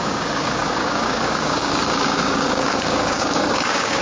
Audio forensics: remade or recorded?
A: remade